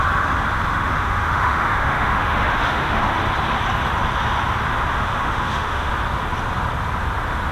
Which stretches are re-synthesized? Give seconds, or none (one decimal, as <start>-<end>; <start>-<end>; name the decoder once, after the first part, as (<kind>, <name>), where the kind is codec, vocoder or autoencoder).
0.7-3.1 (autoencoder, DAC-VAE); 4.9-5.9